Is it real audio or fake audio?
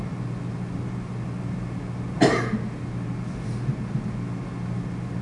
real